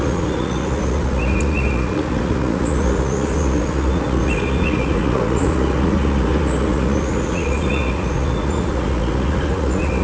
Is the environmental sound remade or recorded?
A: remade